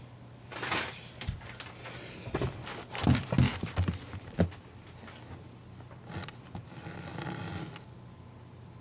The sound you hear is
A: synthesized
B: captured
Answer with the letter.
B